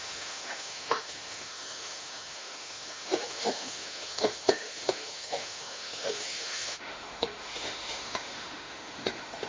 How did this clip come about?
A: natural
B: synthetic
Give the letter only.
B